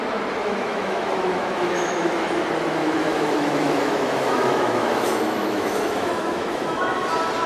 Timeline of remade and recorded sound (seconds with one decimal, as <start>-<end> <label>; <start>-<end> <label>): 0.0-0.4 recorded; 0.4-2.4 remade; 2.4-2.8 recorded; 2.8-7.1 remade; 7.1-7.5 recorded